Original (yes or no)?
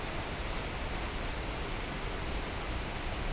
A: yes